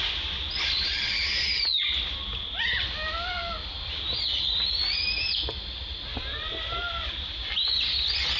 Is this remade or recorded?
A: recorded